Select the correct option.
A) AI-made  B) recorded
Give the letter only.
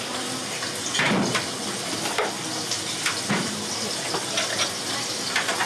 B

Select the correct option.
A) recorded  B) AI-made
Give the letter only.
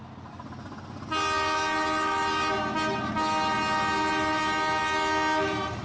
A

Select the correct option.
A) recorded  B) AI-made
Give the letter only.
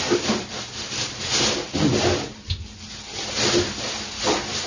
A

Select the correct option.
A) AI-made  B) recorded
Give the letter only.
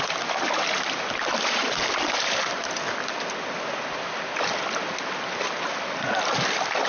B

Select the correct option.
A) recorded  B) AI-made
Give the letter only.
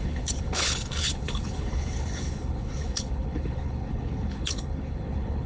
B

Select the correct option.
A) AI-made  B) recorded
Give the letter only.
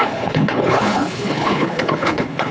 A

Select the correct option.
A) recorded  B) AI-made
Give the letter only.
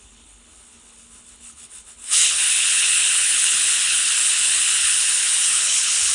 B